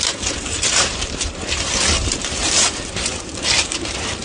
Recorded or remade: remade